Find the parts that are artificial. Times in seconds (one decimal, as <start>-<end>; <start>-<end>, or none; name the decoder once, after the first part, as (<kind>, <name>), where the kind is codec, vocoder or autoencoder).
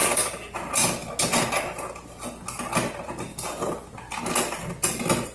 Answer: none